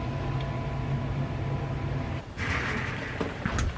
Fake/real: real